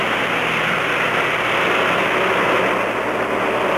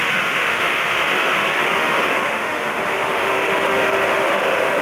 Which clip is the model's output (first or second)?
second